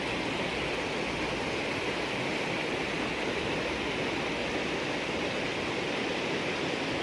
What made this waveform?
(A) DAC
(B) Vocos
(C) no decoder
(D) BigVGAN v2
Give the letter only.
C